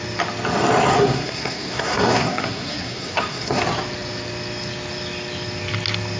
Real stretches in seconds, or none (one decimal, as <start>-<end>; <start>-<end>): 0.0-0.9; 3.6-6.2